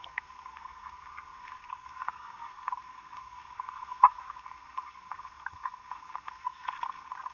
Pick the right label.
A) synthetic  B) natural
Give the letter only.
A